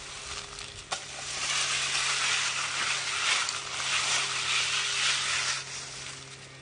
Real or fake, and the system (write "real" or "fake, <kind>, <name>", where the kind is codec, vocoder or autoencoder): real